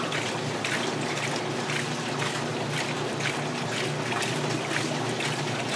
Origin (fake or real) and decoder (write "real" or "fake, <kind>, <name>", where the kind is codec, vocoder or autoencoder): real